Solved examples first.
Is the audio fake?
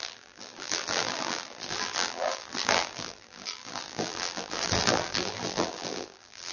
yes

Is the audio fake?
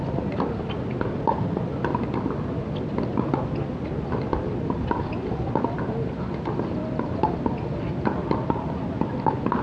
no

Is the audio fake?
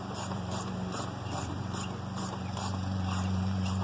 yes